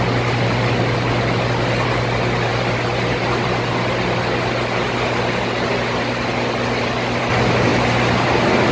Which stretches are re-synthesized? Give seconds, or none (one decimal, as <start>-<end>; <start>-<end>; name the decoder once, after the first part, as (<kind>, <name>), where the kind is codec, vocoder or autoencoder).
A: none